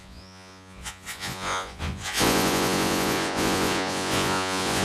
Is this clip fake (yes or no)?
yes